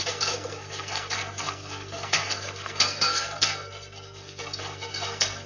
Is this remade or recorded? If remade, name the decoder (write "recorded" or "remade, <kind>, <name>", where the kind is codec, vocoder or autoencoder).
remade, codec, SNAC